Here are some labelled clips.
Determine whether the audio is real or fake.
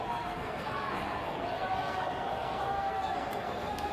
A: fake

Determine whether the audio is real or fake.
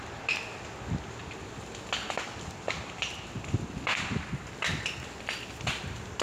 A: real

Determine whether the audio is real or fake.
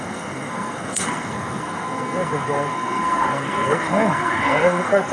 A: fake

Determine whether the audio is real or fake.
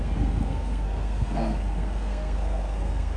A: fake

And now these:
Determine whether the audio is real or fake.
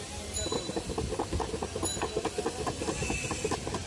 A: real